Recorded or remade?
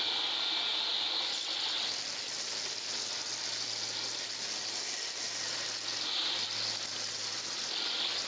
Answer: recorded